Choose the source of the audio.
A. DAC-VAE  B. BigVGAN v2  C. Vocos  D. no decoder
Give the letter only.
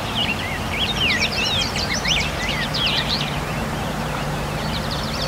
B